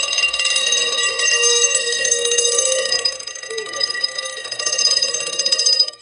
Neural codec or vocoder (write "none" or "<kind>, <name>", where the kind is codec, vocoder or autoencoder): codec, SNAC